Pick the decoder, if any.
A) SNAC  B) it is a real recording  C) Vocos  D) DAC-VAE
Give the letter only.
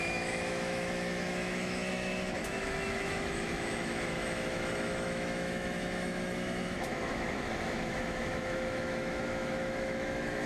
D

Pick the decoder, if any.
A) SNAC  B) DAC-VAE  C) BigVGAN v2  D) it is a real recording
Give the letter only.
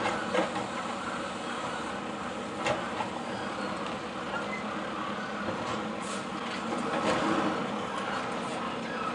D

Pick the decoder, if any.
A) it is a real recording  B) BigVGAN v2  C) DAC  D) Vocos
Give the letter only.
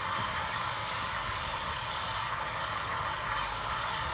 C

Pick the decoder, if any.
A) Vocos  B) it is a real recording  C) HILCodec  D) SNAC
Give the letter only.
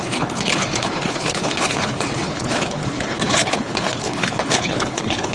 C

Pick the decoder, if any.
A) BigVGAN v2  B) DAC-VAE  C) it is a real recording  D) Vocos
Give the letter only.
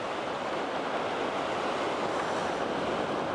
C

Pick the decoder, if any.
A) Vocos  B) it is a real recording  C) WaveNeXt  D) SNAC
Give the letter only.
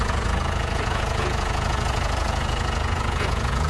A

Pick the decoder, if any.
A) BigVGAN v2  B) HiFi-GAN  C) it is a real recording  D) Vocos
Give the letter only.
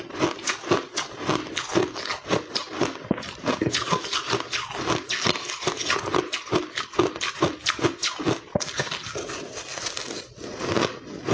C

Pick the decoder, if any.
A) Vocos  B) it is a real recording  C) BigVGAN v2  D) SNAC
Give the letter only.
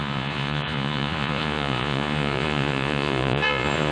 A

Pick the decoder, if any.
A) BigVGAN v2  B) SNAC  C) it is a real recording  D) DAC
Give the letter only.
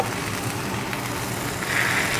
C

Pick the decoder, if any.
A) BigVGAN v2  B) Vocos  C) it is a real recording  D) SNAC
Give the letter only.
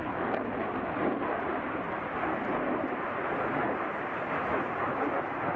C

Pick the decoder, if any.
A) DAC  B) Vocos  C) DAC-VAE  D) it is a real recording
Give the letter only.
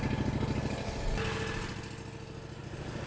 D